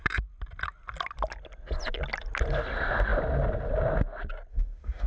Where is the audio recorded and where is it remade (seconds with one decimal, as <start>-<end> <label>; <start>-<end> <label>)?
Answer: 0.0-4.5 recorded; 4.5-5.1 remade